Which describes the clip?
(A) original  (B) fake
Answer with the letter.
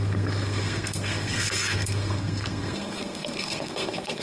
B